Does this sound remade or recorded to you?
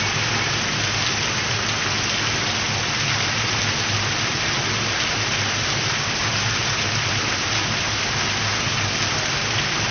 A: recorded